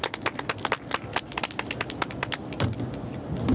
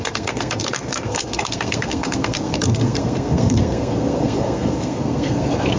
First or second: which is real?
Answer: first